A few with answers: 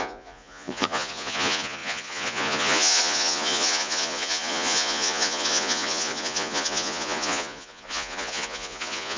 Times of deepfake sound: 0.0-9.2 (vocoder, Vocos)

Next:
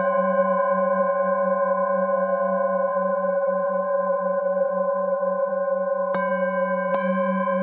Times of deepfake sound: 2.9-5.5 (vocoder, Vocos)